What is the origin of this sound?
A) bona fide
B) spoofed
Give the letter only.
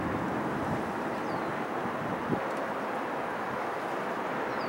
A